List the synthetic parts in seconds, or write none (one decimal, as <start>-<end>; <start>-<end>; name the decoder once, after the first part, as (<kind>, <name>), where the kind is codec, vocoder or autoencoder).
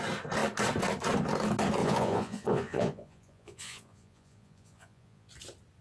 1.8-5.3 (vocoder, Vocos)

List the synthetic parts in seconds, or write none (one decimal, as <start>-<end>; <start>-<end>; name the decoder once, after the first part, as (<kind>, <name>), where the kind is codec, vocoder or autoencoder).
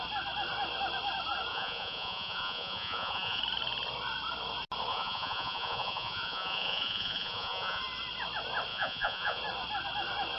1.5-3.4 (vocoder, Vocos); 4.9-7.8; 8.7-9.4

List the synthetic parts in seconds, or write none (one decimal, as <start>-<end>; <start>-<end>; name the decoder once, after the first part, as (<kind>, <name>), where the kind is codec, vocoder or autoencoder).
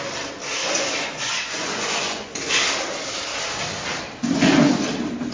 0.6-2.5 (vocoder, Vocos)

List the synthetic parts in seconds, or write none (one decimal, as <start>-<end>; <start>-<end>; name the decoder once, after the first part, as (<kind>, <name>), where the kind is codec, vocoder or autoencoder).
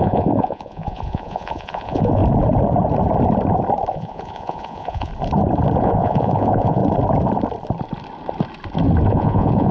0.0-2.2 (vocoder, Vocos); 3.9-5.1; 5.8-6.8; 9.1-9.7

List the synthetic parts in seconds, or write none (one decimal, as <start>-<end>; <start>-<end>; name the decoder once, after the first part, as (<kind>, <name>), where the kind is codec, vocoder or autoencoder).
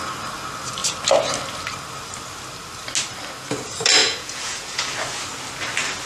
4.0-4.8 (vocoder, Vocos)